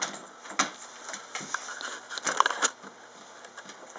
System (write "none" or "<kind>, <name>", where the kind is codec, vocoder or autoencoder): none